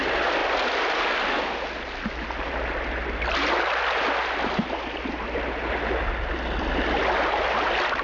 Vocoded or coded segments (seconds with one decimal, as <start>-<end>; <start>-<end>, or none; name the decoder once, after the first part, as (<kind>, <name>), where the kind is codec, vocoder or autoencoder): 0.4-1.0 (vocoder, BigVGAN v2)